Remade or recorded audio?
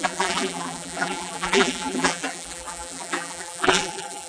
remade